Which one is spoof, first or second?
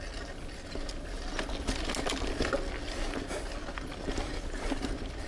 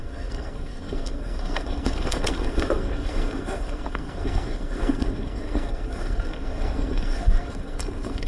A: second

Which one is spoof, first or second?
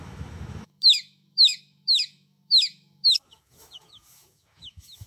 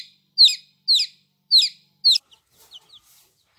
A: first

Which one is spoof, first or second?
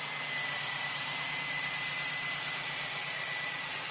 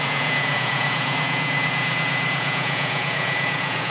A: second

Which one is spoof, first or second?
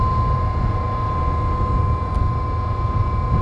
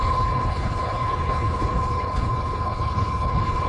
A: second